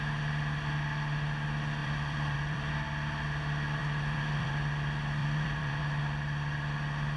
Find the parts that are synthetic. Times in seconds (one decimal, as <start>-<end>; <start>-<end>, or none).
1.8-2.7; 3.8-4.5; 5.2-5.8